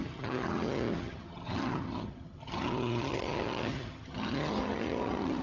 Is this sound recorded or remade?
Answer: remade